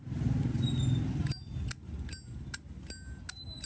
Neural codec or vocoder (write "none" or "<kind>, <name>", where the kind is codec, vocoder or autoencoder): none